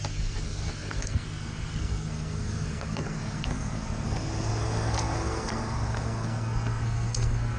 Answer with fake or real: fake